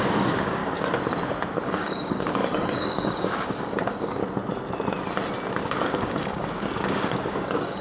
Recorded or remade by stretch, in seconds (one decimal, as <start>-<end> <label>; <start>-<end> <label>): 0.0-0.6 remade; 0.6-1.6 recorded; 1.6-4.2 remade; 4.2-5.6 recorded; 5.6-7.8 remade